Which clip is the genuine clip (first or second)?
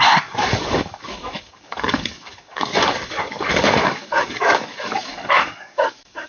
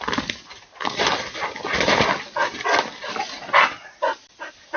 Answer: second